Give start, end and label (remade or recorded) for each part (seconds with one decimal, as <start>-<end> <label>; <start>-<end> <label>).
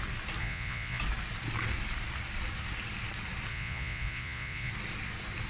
0.0-0.4 recorded; 0.4-1.0 remade; 1.0-3.5 recorded; 3.5-4.7 remade; 4.7-5.5 recorded